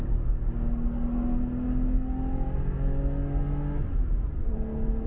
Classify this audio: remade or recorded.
recorded